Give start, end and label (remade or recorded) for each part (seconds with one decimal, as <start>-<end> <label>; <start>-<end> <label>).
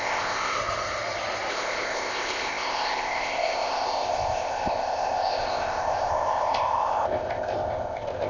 0.0-0.6 remade; 0.6-1.5 recorded; 1.5-8.3 remade